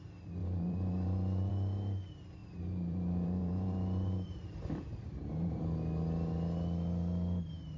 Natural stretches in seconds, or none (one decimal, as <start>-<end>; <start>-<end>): 0.0-0.4; 1.5-2.4; 5.6-7.8